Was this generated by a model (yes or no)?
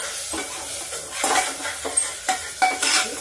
no